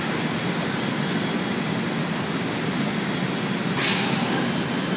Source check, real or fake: real